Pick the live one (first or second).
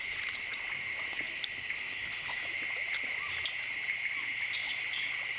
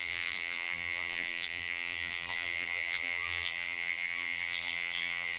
first